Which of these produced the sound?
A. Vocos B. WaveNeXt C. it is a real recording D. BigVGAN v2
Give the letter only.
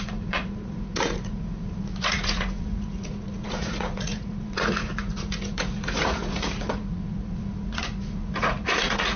A